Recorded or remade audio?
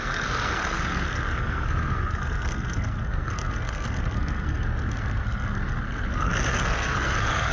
remade